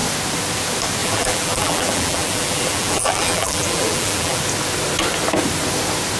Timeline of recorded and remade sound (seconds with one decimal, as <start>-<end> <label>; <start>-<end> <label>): 0.0-1.0 recorded; 1.0-4.4 remade; 4.4-6.2 recorded